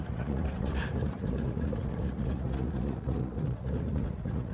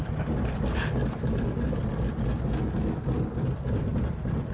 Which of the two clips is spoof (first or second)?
first